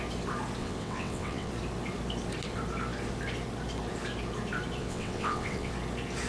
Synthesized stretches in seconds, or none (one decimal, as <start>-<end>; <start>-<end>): 0.6-1.5; 4.8-5.7